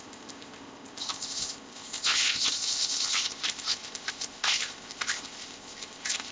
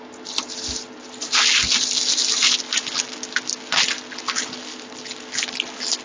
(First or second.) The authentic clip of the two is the second